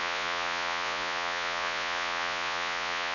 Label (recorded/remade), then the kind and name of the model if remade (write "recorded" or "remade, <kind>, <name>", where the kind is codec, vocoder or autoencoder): remade, vocoder, Vocos